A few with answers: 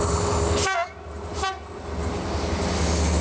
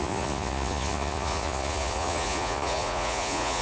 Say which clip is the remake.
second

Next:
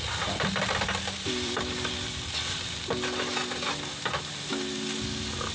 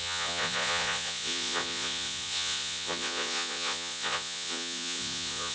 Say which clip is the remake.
second